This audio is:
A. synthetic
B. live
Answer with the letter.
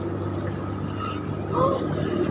B